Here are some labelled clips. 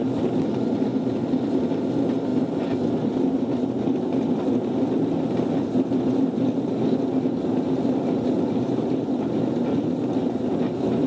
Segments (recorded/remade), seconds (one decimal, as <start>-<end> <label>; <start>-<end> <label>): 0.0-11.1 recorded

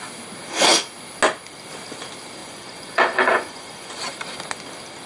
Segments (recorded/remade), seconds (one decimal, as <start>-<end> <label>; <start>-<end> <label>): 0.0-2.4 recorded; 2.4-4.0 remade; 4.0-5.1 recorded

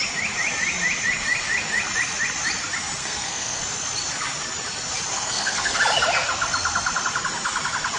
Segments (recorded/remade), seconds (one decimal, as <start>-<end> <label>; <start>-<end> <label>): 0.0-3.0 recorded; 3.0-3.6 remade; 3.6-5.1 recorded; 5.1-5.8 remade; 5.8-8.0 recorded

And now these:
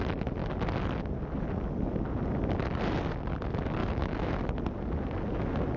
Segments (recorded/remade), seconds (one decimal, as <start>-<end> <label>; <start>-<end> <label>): 0.0-3.8 recorded; 3.8-4.4 remade; 4.4-5.8 recorded

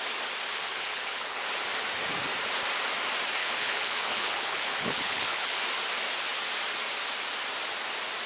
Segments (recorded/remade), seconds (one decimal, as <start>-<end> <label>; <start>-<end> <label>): 0.0-0.5 recorded; 0.5-1.4 remade; 1.4-3.4 recorded; 3.4-5.6 remade; 5.6-8.3 recorded

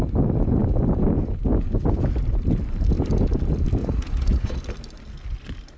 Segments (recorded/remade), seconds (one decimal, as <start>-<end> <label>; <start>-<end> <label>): 0.0-3.8 recorded; 3.8-4.6 remade; 4.6-5.8 recorded

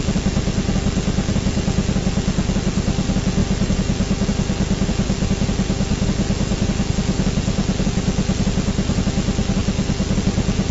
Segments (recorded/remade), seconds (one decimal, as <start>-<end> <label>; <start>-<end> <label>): 0.0-10.7 recorded